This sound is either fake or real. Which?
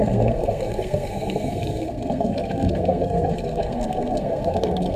fake